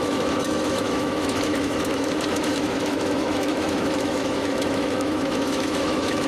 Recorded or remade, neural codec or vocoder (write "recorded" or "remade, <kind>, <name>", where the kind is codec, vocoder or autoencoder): remade, autoencoder, DAC-VAE